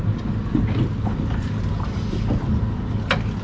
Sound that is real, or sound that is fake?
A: real